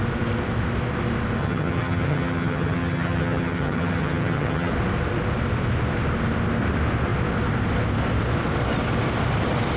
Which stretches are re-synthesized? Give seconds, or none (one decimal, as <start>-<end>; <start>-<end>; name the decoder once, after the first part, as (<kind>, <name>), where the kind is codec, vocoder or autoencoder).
1.4-4.7 (vocoder, HiFi-GAN)